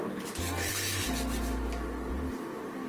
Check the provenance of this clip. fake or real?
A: real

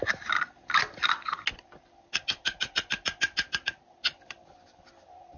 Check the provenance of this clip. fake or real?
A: real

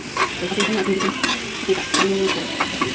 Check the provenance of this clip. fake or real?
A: real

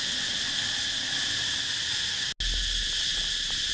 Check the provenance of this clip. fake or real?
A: real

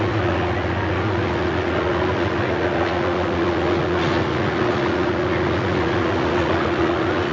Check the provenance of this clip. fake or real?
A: fake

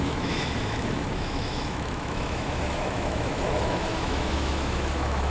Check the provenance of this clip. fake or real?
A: fake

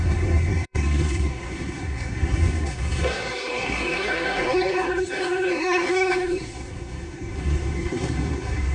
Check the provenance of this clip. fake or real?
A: fake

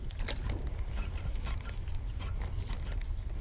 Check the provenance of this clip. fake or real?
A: real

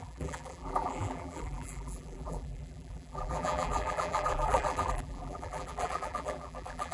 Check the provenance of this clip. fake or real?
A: fake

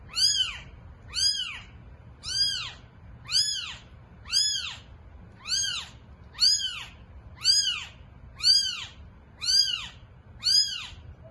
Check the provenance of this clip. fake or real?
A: real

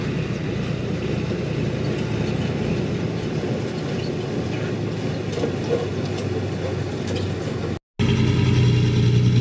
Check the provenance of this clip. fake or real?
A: real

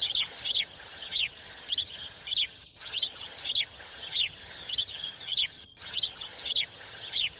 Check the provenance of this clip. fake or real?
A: fake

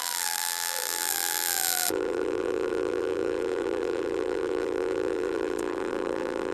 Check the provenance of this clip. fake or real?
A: fake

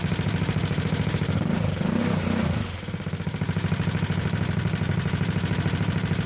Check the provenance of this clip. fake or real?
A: fake